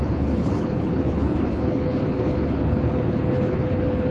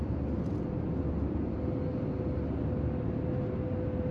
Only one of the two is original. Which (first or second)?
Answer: second